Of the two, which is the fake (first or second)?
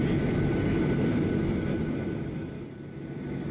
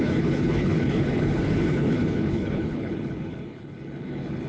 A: second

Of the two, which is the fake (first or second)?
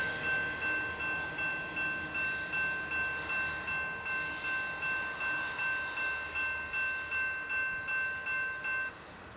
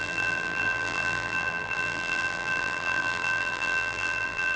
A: second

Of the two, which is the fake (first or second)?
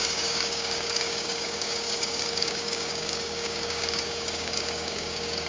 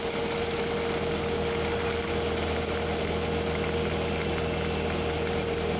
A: first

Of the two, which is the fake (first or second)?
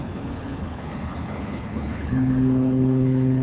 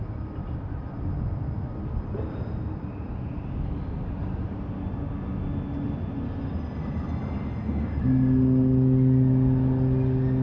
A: first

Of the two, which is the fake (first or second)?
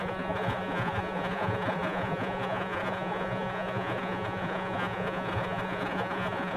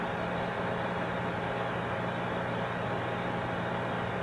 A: first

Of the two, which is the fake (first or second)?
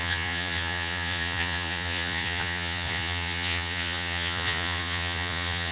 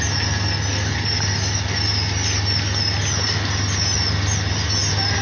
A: first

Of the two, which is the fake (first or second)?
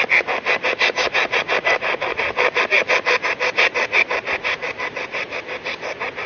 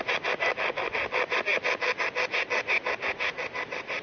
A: first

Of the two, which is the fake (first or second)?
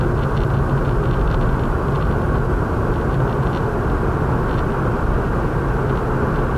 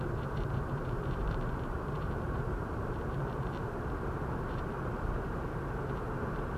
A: second